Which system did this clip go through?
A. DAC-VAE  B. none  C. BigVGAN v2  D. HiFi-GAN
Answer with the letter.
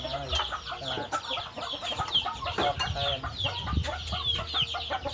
B